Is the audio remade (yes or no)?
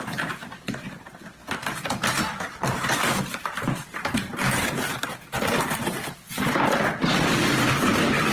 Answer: no